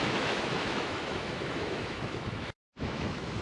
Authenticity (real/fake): fake